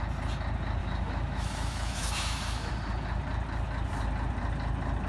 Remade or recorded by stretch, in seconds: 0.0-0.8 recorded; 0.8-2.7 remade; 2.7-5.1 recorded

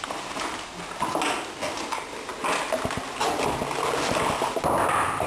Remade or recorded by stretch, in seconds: 0.0-5.3 recorded